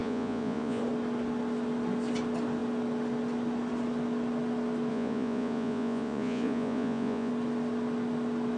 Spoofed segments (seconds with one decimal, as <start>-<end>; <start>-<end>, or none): 0.0-0.8; 4.9-7.3